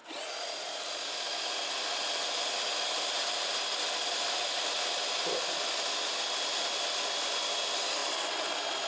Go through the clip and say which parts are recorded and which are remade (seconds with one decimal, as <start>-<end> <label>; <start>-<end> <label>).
0.0-8.9 recorded